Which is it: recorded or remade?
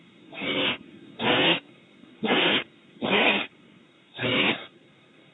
remade